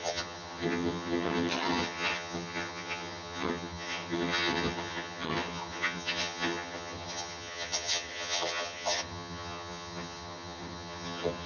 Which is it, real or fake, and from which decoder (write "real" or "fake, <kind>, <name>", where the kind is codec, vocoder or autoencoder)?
fake, vocoder, HiFi-GAN